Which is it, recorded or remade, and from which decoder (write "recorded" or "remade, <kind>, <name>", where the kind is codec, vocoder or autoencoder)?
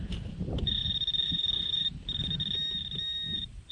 remade, vocoder, BigVGAN v2